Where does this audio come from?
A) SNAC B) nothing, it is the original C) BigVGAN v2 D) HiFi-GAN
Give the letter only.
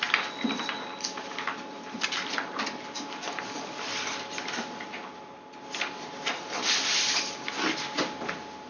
B